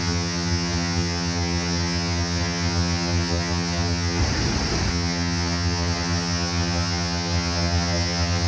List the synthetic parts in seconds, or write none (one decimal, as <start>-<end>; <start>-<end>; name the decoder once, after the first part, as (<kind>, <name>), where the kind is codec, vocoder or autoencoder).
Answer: 0.0-4.2 (vocoder, HiFi-GAN); 4.9-8.5